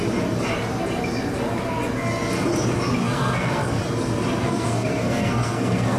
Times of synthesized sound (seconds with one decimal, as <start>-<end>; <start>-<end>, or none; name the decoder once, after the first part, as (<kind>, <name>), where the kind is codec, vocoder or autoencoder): 3.0-3.8 (codec, SNAC); 4.4-6.0